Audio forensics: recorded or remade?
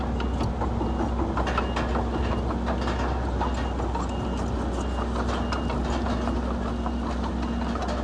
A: recorded